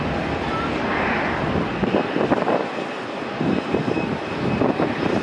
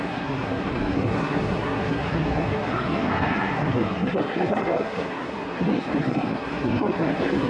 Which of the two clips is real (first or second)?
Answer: first